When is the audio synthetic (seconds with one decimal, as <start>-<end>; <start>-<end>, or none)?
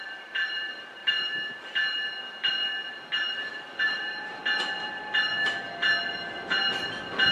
0.0-1.0; 3.8-4.4